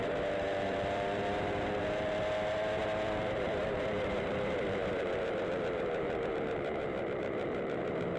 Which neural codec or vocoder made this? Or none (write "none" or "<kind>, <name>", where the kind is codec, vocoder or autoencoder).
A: vocoder, BigVGAN v2